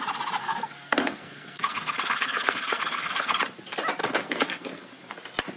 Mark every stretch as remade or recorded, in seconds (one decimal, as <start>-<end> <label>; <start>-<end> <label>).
0.0-0.4 recorded; 0.4-3.4 remade; 3.4-4.0 recorded; 4.0-5.1 remade; 5.1-5.6 recorded